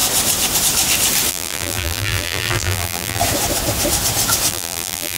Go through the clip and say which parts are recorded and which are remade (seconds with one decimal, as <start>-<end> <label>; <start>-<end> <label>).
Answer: 0.0-1.3 recorded; 1.3-3.2 remade; 3.2-4.5 recorded; 4.5-5.2 remade